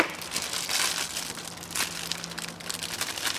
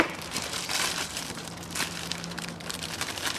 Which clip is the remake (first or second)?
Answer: second